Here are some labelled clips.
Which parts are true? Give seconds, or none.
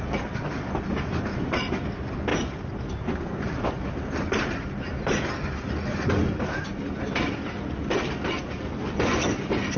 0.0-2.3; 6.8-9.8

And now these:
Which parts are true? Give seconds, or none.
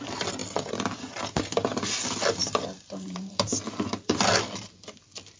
0.0-0.4; 1.4-2.4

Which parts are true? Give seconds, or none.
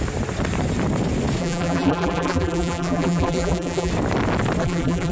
0.0-1.4; 3.9-4.6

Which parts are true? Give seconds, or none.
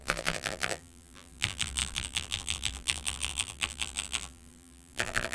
none